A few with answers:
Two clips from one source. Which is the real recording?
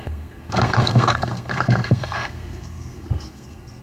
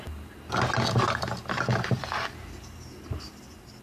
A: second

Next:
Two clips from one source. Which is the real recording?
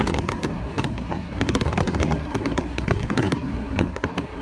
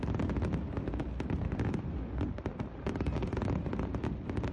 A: second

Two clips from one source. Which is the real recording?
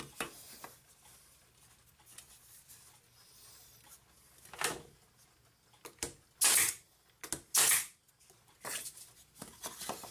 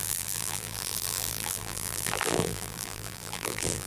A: first